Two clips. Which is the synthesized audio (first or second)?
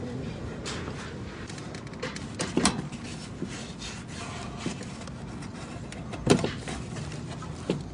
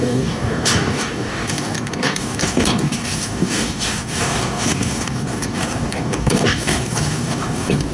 second